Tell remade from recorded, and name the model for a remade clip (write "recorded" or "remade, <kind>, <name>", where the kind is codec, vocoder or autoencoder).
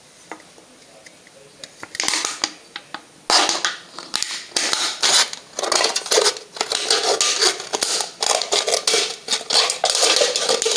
recorded